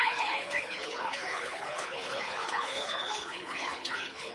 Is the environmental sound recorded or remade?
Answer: remade